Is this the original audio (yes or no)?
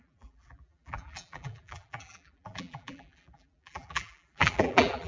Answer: no